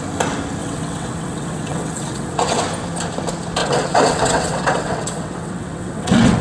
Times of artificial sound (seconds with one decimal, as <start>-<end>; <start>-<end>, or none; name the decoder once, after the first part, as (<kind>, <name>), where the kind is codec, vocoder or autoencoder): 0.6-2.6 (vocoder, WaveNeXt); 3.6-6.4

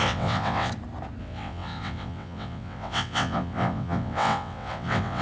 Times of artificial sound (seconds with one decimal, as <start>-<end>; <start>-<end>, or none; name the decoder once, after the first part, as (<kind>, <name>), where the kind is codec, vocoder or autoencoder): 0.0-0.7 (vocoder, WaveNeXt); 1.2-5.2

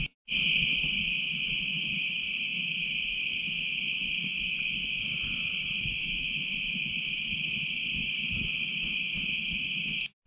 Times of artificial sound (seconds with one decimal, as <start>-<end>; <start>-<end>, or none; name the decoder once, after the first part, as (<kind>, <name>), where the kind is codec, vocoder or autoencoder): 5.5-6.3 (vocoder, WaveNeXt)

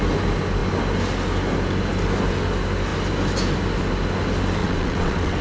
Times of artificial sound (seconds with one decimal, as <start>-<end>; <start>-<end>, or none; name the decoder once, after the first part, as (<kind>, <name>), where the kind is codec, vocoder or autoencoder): 4.6-5.4 (vocoder, WaveNeXt)

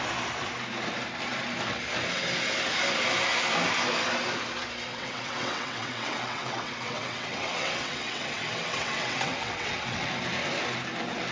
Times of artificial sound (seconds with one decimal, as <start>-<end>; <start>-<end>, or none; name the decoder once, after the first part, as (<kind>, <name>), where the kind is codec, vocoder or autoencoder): 4.9-10.1 (vocoder, WaveNeXt)